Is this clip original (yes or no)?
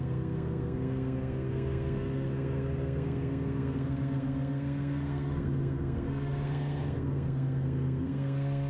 no